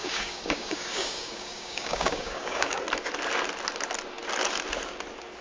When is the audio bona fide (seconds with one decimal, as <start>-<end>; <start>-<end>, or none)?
2.8-5.4